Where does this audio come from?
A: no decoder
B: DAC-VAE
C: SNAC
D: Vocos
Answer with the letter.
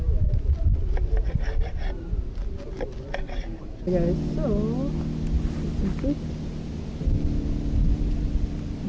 A